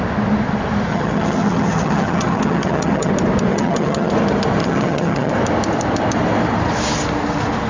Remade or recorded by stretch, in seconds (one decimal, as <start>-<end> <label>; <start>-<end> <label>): 0.0-0.9 recorded; 0.9-3.1 remade; 3.1-3.5 recorded; 3.5-4.1 remade; 4.1-4.6 recorded; 4.6-5.3 remade; 5.3-7.7 recorded